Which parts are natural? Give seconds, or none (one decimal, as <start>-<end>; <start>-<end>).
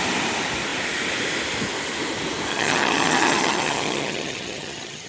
0.0-2.5